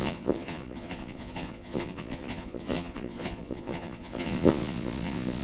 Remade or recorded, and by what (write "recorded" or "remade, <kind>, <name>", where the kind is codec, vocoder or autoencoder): remade, vocoder, Vocos